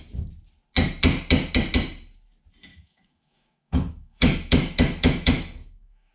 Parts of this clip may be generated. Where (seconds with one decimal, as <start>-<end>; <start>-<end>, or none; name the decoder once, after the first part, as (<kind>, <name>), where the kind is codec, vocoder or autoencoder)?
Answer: 2.7-6.1 (autoencoder, DAC-VAE)